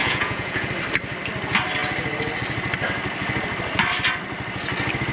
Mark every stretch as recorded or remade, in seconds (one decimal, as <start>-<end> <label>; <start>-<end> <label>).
0.0-0.7 remade; 0.7-5.1 recorded

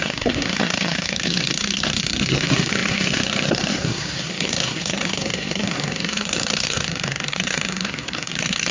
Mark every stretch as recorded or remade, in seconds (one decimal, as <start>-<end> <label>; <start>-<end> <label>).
0.0-8.7 remade

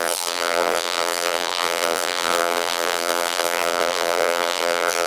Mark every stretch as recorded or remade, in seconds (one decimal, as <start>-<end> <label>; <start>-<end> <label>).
0.0-5.1 remade

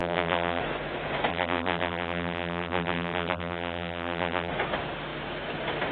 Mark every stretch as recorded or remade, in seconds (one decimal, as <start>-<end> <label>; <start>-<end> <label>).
0.0-0.6 remade; 0.6-1.3 recorded; 1.3-4.5 remade; 4.5-5.9 recorded

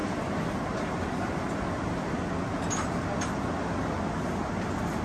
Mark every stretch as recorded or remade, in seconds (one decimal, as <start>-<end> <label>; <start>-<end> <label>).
0.0-5.0 recorded

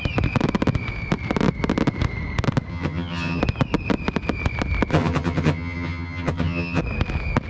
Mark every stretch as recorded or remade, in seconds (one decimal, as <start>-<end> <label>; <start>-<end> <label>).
0.0-2.7 recorded; 2.7-3.4 remade; 3.4-4.9 recorded; 4.9-6.8 remade; 6.8-7.5 recorded